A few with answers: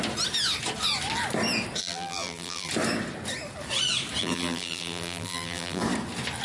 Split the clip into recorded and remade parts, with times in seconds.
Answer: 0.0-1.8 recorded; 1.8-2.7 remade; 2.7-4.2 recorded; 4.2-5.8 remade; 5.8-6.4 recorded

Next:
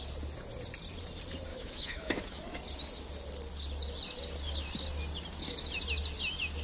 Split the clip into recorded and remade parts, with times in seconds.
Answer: 0.0-1.5 recorded; 1.5-2.6 remade; 2.6-6.6 recorded

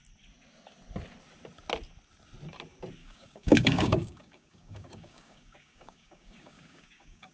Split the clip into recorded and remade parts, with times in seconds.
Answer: 0.0-3.0 recorded; 3.0-7.3 remade

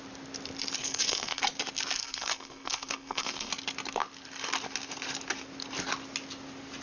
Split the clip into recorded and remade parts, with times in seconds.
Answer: 0.0-0.8 recorded; 0.8-1.4 remade; 1.4-2.0 recorded; 2.0-3.5 remade; 3.5-6.8 recorded

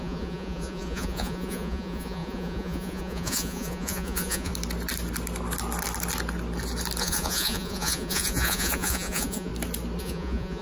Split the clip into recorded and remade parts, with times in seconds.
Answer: 0.0-4.5 remade; 4.5-7.0 recorded; 7.0-9.5 remade; 9.5-10.0 recorded; 10.0-10.6 remade

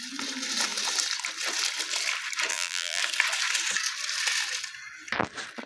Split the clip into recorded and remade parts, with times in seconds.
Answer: 0.0-2.5 recorded; 2.5-3.0 remade; 3.0-5.7 recorded

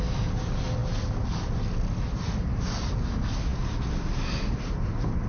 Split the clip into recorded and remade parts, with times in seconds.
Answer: 0.0-5.3 recorded

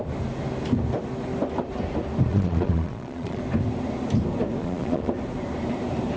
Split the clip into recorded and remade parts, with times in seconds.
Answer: 0.0-2.3 recorded; 2.3-3.4 remade; 3.4-4.6 recorded; 4.6-5.1 remade; 5.1-6.2 recorded